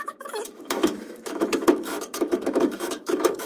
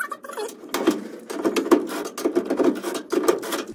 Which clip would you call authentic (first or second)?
second